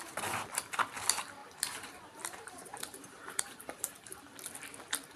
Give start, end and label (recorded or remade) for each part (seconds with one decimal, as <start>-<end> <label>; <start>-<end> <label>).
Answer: 0.0-1.4 recorded; 1.4-4.2 remade; 4.2-5.2 recorded